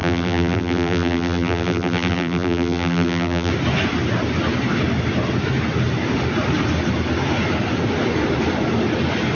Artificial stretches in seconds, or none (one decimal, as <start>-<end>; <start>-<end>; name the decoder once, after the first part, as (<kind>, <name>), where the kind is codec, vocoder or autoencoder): 0.0-3.5 (vocoder, BigVGAN v2)